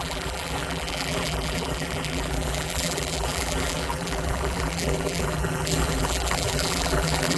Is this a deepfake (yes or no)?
yes